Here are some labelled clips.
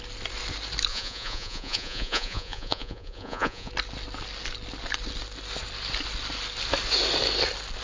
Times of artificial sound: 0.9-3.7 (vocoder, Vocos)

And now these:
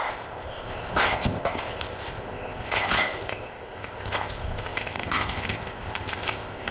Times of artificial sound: 0.0-6.7 (codec, ZipCodec)

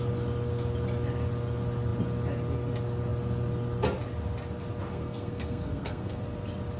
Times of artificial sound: 4.9-6.2 (codec, SNAC)

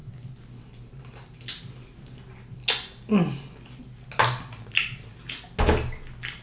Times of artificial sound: none

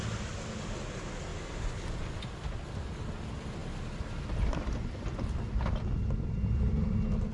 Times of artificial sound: 1.3-2.0 (vocoder, BigVGAN v2); 3.6-7.3